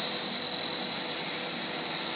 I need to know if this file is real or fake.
real